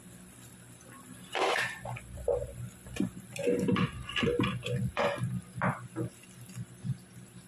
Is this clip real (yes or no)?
no